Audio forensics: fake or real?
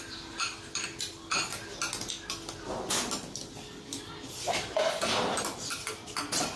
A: real